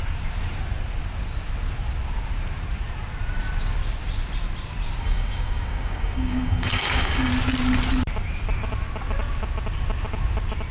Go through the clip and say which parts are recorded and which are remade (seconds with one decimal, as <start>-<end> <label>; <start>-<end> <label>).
0.0-5.0 recorded; 5.0-7.3 remade; 7.3-10.7 recorded